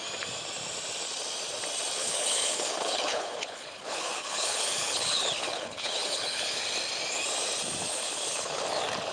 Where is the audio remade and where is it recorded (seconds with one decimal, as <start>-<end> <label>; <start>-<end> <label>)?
0.0-2.0 recorded; 2.0-6.6 remade; 6.6-7.8 recorded; 7.8-8.6 remade; 8.6-9.1 recorded